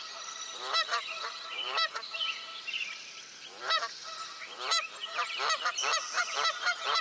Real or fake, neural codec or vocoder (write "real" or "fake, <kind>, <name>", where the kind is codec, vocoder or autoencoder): fake, vocoder, BigVGAN v2